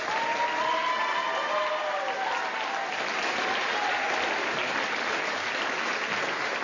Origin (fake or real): real